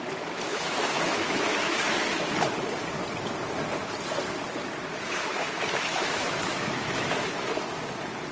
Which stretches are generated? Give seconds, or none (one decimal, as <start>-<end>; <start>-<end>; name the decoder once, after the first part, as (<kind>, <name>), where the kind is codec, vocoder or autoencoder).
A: 0.5-2.5 (autoencoder, DAC-VAE); 4.9-7.6